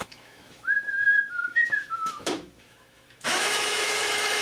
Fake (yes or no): yes